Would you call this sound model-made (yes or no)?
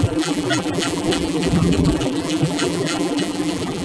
yes